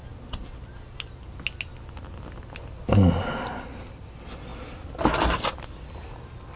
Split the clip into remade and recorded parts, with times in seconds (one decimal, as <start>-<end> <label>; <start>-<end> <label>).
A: 0.0-6.6 recorded